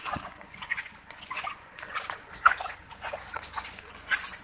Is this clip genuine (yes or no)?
no